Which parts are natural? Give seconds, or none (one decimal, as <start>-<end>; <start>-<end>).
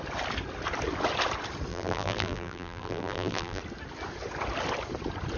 0.0-1.7; 3.6-5.4